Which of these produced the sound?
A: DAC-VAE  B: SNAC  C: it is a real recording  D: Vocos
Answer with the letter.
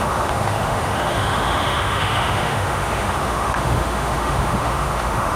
A